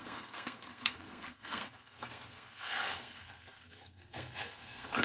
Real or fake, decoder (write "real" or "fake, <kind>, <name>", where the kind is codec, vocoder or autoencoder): fake, codec, SNAC